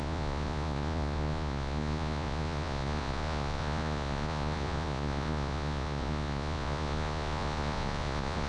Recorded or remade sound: remade